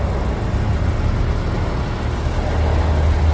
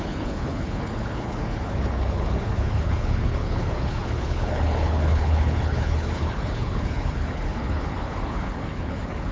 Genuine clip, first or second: first